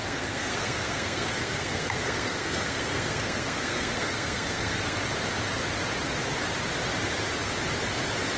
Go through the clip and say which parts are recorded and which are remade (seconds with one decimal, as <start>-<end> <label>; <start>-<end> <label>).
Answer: 0.0-5.0 remade; 5.0-8.4 recorded